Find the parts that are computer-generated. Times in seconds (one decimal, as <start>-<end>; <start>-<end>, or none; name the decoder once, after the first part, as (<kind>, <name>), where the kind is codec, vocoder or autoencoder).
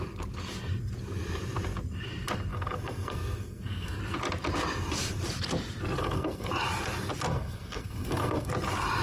2.5-4.0 (codec, SNAC); 6.0-6.5; 7.3-8.5